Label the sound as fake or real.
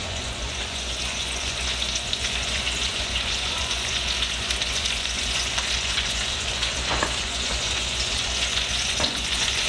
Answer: fake